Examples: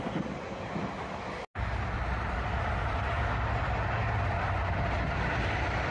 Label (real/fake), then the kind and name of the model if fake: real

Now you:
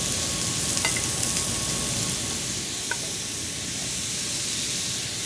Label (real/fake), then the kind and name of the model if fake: real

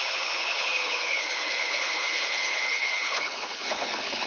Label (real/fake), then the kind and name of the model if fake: fake, codec, HILCodec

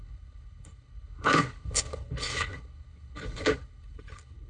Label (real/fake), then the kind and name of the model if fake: fake, codec, HILCodec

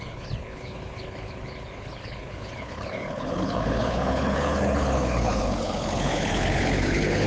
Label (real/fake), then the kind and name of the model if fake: fake, codec, HILCodec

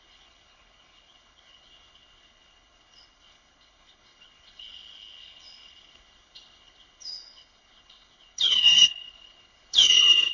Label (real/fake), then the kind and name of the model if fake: fake, codec, HILCodec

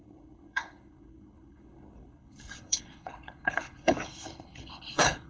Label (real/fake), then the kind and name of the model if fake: fake, codec, HILCodec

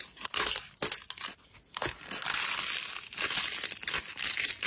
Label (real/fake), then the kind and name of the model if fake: real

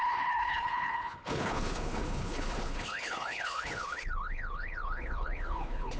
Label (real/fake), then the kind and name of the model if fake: fake, codec, HILCodec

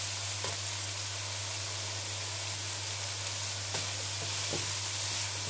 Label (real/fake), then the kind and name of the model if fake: real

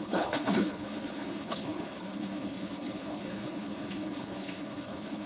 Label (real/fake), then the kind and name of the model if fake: fake, codec, HILCodec